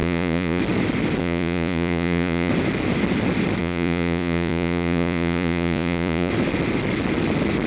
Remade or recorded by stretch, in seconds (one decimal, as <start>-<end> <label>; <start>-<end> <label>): 0.0-0.6 remade; 0.6-1.2 recorded; 1.2-2.5 remade; 2.5-3.6 recorded; 3.6-6.3 remade; 6.3-7.7 recorded